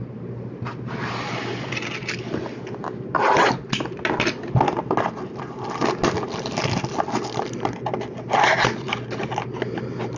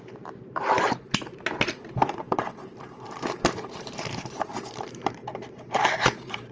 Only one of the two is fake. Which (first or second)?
second